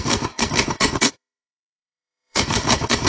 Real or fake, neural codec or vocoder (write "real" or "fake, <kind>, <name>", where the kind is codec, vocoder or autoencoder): fake, codec, SNAC